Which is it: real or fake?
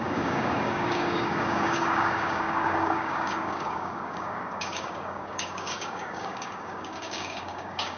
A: fake